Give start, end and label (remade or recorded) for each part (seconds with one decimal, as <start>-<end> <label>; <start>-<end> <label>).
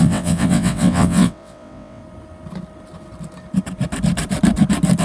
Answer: 0.0-2.0 remade; 2.0-5.0 recorded